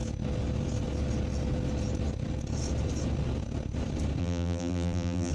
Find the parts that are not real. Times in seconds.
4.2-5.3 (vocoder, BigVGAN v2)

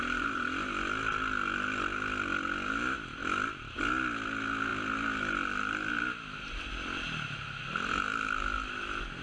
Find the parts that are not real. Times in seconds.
none

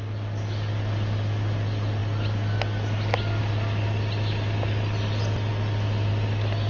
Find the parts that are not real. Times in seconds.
none